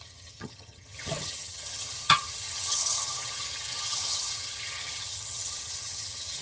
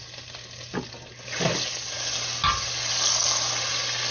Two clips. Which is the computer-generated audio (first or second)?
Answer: first